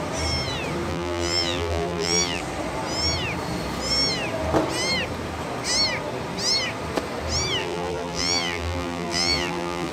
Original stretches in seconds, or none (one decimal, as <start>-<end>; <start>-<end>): 0.0-0.9; 2.4-7.6